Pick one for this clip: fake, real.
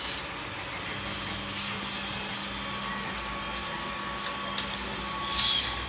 real